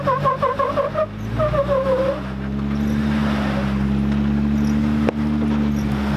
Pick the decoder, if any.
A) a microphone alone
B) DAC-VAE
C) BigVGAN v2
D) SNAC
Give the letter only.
A